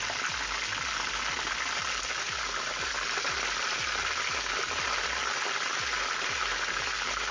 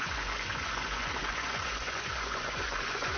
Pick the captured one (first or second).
first